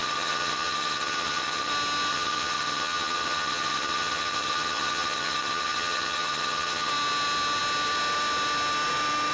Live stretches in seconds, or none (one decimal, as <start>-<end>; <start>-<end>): 1.7-2.1; 6.9-9.3

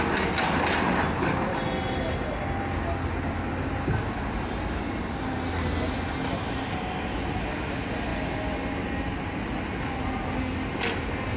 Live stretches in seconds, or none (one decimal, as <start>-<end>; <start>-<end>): 0.0-11.4

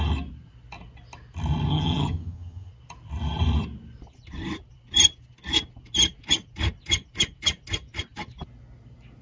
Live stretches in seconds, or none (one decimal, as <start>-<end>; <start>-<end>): 0.0-1.7; 2.7-9.2

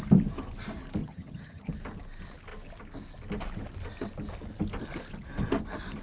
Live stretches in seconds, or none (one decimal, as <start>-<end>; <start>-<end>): 0.0-1.0; 1.7-6.0

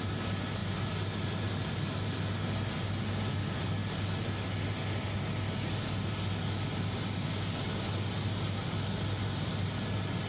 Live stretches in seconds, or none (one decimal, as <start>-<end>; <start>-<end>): 0.0-10.3

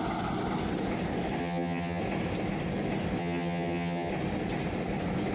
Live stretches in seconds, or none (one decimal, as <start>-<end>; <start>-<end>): 0.0-1.4; 2.0-3.2; 4.1-5.3

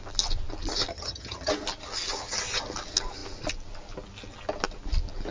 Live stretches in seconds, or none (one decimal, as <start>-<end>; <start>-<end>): 0.0-0.9; 1.5-5.3